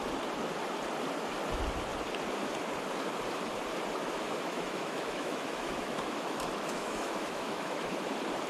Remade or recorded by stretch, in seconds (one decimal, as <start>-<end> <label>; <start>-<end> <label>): 0.0-4.0 recorded; 4.0-8.1 remade; 8.1-8.5 recorded